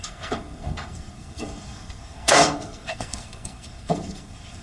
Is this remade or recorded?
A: remade